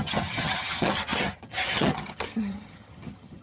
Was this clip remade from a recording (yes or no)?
yes